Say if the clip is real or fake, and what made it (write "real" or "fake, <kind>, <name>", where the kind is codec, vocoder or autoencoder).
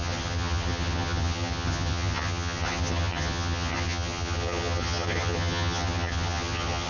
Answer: fake, vocoder, HiFi-GAN